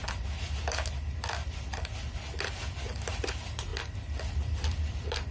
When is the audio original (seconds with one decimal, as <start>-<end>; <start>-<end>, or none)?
0.0-3.1; 3.7-4.3

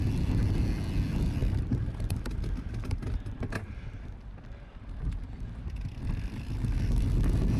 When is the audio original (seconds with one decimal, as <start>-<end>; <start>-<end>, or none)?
0.0-7.6

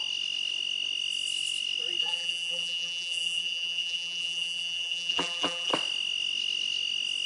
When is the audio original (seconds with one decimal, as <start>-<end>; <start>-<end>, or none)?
0.0-2.0; 5.7-7.3

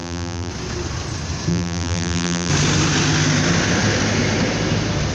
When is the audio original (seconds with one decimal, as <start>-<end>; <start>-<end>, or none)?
0.5-1.5; 2.5-5.1

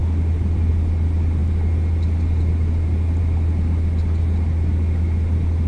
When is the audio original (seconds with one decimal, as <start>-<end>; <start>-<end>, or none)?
0.7-5.7